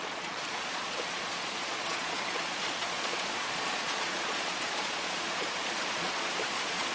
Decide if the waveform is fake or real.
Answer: fake